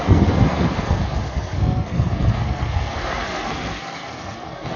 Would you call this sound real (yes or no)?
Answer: no